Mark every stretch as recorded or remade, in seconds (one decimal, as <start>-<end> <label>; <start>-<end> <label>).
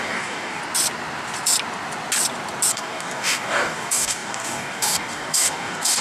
0.0-0.6 remade; 0.6-2.7 recorded; 2.7-6.0 remade